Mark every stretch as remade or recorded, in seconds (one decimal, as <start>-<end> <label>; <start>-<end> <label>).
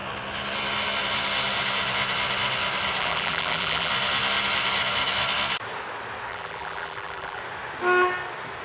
0.0-3.0 recorded; 3.0-3.9 remade; 3.9-6.3 recorded; 6.3-7.4 remade; 7.4-8.6 recorded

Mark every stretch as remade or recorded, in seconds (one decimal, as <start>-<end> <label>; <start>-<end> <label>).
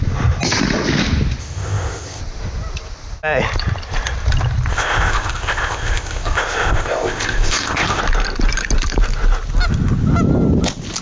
0.0-1.4 recorded; 1.4-2.2 remade; 2.2-4.7 recorded; 4.7-8.0 remade; 8.0-11.0 recorded